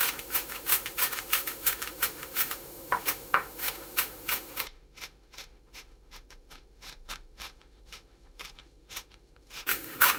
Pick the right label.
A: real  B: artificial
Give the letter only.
B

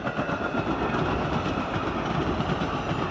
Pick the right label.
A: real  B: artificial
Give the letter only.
A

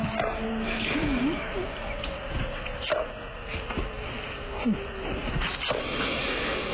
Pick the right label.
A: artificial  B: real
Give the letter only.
B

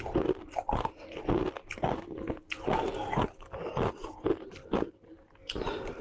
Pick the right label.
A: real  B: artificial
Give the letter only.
A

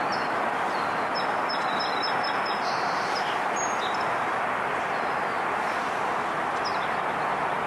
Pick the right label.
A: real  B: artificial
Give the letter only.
A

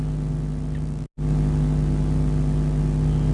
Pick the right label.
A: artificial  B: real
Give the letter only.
B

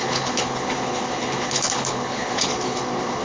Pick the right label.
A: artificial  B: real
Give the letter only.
A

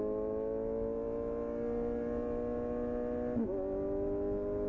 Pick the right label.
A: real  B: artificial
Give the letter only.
A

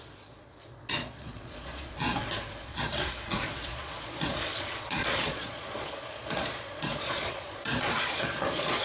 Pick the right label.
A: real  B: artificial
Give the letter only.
B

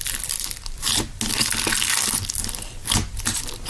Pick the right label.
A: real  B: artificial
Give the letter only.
A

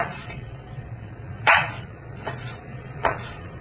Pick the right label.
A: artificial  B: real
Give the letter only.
A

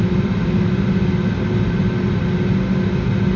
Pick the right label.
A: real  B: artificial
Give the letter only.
A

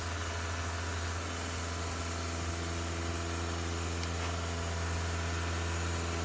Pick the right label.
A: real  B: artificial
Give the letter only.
A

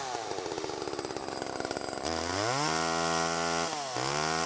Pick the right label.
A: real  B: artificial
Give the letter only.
A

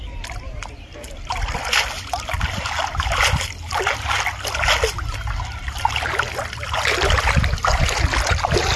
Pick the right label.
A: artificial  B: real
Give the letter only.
B